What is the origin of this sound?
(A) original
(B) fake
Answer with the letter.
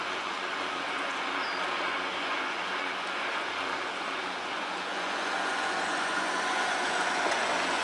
B